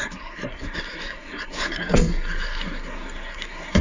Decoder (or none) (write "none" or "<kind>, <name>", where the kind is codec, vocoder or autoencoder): codec, SNAC